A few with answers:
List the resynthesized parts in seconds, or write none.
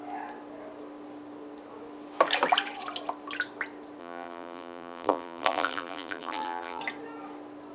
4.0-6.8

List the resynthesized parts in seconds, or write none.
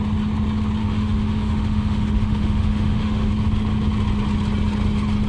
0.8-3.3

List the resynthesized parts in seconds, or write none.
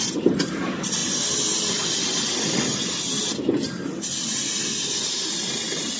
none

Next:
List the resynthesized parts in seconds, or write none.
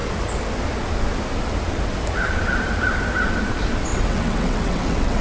3.9-5.2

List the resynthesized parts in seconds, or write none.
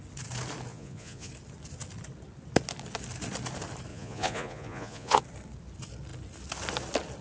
0.7-1.3; 3.9-5.2